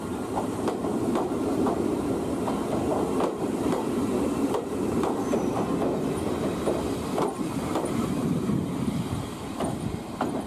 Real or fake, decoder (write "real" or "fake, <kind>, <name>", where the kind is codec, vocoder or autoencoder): fake, vocoder, BigVGAN v2